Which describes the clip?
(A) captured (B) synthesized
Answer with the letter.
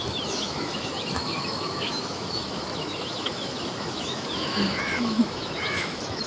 B